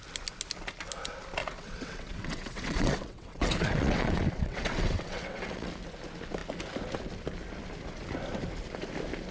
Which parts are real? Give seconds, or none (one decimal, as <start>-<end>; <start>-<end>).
0.0-1.4; 5.7-9.3